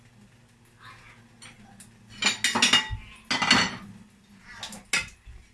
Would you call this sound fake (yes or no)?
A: no